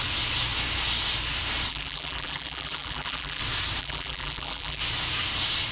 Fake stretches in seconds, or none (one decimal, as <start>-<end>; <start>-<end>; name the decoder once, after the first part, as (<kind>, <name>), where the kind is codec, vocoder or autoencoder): 1.7-3.4 (vocoder, BigVGAN v2); 3.8-4.8